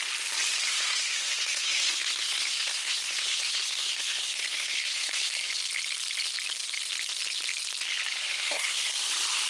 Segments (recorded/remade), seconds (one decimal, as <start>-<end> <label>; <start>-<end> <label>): 0.0-0.7 recorded; 0.7-5.5 remade; 5.5-8.2 recorded; 8.2-8.9 remade; 8.9-9.5 recorded